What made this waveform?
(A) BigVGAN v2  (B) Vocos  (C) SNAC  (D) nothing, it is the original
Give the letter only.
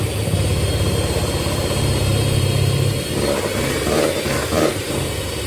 A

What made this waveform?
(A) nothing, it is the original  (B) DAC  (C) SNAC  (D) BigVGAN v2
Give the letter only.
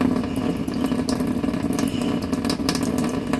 A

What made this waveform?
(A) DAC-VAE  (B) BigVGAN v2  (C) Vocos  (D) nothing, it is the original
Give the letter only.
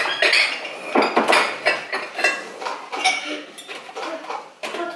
D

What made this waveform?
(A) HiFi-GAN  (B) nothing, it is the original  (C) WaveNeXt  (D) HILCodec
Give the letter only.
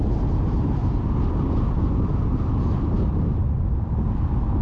B